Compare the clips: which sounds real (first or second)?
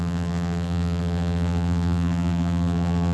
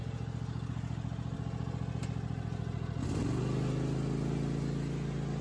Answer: second